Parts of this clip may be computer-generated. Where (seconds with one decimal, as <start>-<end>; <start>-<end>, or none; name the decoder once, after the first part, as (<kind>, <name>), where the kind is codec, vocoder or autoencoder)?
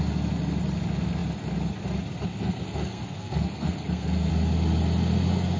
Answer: 2.3-4.3 (codec, SNAC)